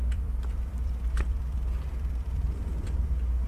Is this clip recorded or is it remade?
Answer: remade